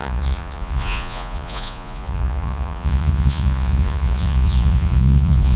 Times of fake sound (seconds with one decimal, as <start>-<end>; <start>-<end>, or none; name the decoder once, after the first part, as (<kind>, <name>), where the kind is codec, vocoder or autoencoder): 0.0-5.6 (vocoder, Vocos)